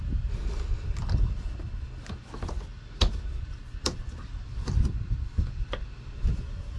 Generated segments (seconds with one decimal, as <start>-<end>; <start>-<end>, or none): 2.7-6.8